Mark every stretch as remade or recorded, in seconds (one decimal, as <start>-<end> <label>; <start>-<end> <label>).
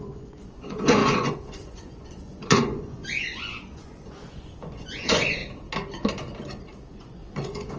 0.0-5.4 remade; 5.4-6.9 recorded; 6.9-7.8 remade